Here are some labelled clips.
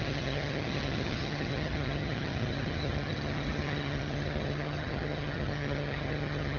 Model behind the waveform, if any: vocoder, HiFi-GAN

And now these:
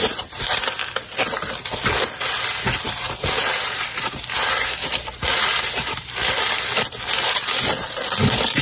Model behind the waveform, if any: none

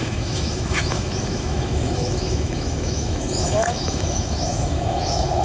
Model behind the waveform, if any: autoencoder, DAC-VAE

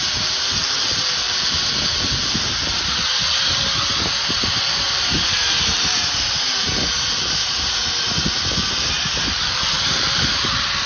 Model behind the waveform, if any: vocoder, BigVGAN v2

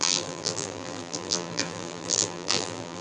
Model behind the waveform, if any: vocoder, BigVGAN v2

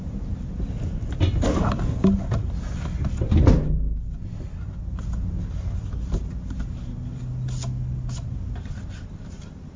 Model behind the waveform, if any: none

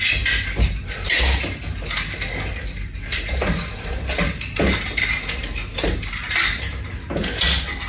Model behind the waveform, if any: none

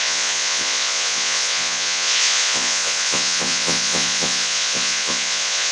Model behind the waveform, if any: vocoder, Vocos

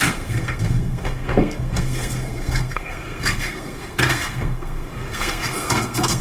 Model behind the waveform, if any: codec, SNAC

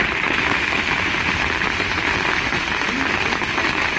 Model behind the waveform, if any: vocoder, BigVGAN v2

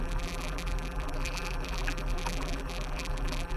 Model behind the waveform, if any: vocoder, BigVGAN v2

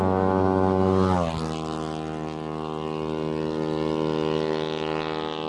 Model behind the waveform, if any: none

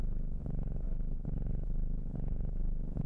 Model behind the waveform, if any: none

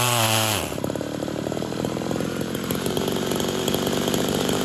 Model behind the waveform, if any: vocoder, BigVGAN v2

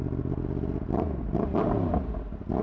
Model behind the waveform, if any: none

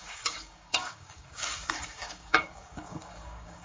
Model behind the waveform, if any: codec, DAC